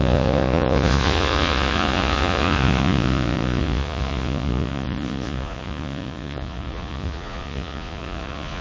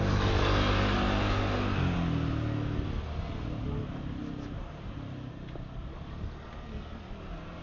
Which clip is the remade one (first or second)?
first